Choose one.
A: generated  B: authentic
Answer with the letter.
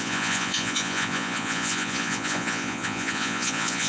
A